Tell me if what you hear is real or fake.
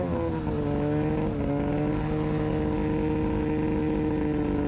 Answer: real